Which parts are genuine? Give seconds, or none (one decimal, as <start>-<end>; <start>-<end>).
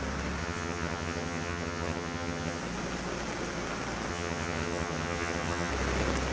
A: 0.0-0.4; 2.6-4.1; 5.7-6.3